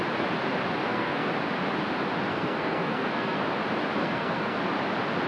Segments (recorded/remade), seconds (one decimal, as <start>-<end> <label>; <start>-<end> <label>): 0.0-0.8 recorded; 0.8-1.3 remade; 1.3-2.3 recorded; 2.3-3.4 remade; 3.4-4.0 recorded; 4.0-4.6 remade; 4.6-5.3 recorded